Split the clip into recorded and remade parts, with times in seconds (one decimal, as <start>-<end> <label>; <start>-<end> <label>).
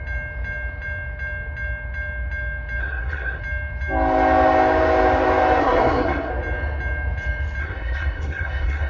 0.0-2.8 recorded; 2.8-3.4 remade; 3.4-5.6 recorded; 5.6-6.3 remade; 6.3-7.6 recorded; 7.6-8.9 remade